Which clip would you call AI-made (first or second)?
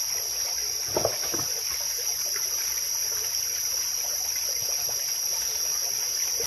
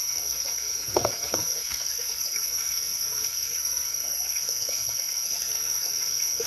second